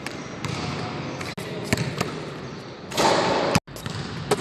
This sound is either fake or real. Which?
real